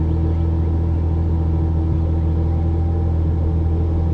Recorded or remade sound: recorded